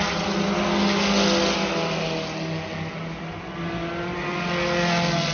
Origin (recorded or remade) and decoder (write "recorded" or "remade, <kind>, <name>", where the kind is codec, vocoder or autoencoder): recorded